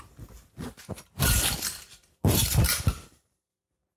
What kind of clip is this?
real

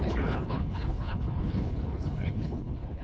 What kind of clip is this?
fake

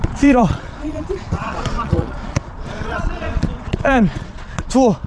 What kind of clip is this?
fake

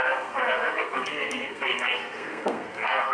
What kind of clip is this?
fake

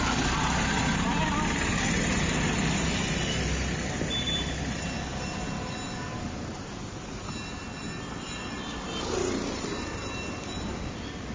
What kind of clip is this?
real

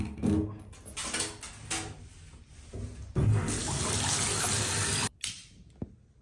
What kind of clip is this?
real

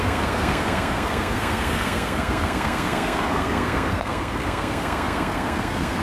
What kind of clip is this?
fake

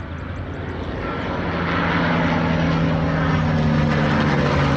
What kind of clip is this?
real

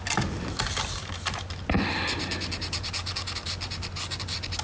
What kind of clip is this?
real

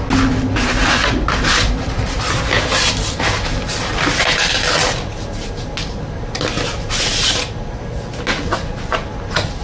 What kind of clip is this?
real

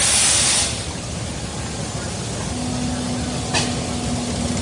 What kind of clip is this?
real